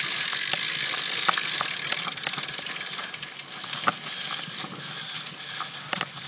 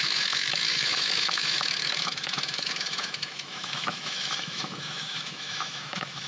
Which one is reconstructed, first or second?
second